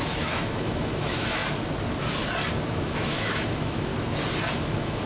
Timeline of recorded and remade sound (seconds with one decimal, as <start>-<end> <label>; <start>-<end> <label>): 0.0-1.4 remade; 1.4-2.7 recorded; 2.7-3.9 remade; 3.9-4.5 recorded; 4.5-5.1 remade